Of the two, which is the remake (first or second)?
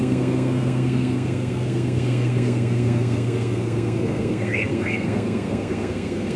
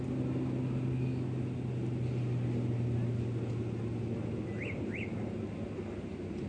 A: first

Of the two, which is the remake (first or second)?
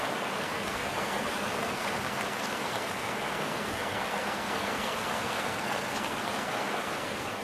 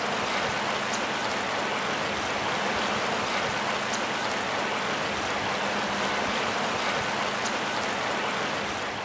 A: first